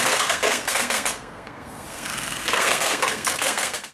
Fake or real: fake